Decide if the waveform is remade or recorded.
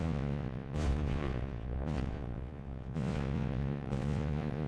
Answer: remade